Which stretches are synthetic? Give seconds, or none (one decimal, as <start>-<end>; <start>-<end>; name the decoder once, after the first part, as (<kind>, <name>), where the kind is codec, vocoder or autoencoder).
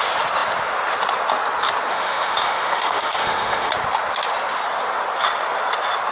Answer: 1.9-3.7 (autoencoder, DAC-VAE)